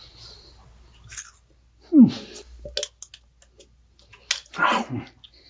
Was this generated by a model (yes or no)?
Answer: no